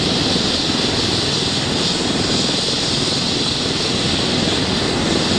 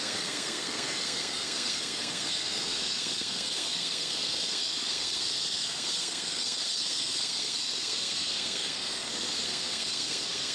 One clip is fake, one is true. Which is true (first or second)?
first